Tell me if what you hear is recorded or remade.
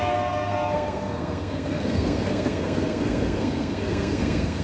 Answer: remade